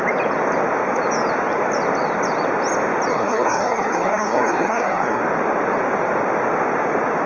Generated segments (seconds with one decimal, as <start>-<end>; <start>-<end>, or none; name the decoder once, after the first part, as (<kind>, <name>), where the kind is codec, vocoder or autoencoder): 3.1-5.2 (codec, SNAC)